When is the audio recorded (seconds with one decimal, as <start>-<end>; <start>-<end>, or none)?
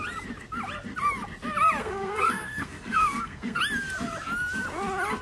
0.0-1.8; 3.6-5.2